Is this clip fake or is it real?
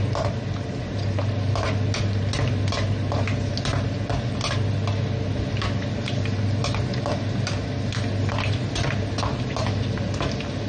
real